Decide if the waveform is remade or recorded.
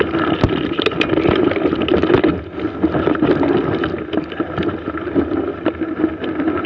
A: recorded